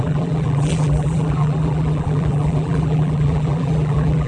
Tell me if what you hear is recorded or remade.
remade